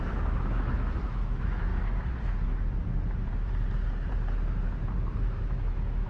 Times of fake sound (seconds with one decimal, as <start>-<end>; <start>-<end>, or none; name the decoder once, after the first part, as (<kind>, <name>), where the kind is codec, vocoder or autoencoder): 0.0-1.7 (autoencoder, DAC-VAE); 5.4-6.1